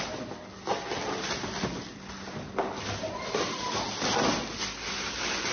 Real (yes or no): yes